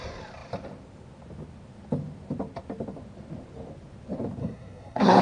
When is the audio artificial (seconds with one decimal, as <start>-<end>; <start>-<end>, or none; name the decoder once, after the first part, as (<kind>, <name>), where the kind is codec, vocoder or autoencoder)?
4.4-5.2 (codec, SNAC)